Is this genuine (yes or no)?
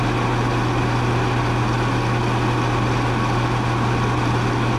yes